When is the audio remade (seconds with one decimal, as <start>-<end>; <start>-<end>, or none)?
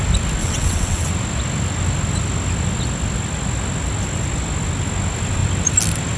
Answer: 0.4-1.1